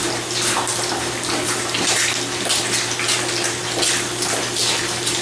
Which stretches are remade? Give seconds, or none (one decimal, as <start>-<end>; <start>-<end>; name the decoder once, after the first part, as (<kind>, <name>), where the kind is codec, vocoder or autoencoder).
none